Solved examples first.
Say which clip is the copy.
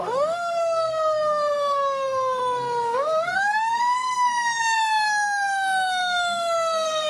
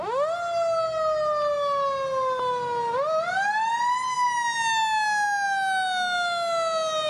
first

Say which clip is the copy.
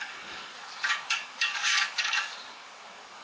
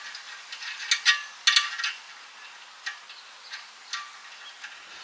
first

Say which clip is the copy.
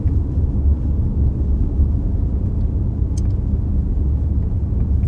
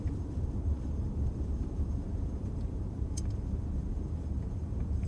second